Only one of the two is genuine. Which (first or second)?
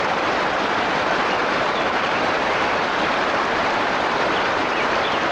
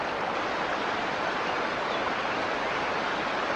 second